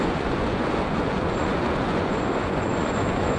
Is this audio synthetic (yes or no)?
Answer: yes